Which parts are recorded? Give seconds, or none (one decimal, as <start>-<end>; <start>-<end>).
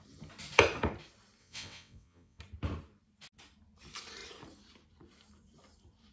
0.0-1.4; 2.4-6.1